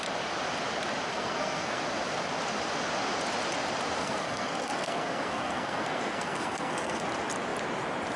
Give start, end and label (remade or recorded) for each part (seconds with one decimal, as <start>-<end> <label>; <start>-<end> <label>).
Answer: 0.0-1.1 recorded; 1.1-1.8 remade; 1.8-4.0 recorded; 4.0-7.0 remade; 7.0-8.2 recorded